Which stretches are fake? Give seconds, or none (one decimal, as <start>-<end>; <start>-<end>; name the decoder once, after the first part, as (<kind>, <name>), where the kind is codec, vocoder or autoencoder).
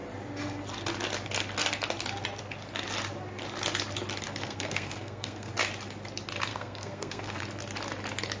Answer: 4.4-5.5 (codec, SNAC); 6.5-7.4